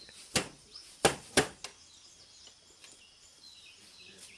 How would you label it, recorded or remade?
recorded